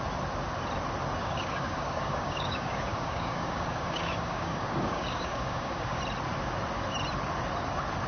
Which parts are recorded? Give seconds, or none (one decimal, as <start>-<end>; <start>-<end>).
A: 0.0-1.2; 6.0-8.1